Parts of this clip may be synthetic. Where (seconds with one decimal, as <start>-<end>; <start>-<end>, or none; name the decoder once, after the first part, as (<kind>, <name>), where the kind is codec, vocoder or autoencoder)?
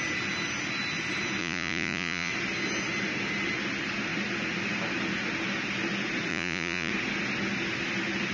1.4-2.3 (vocoder, Vocos); 6.3-6.9